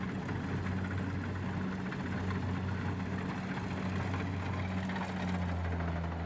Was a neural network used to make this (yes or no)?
no